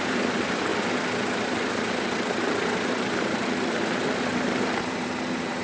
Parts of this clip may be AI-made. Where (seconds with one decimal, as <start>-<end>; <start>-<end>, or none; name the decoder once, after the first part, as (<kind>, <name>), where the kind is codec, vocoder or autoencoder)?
0.0-0.7 (vocoder, BigVGAN v2); 1.9-5.6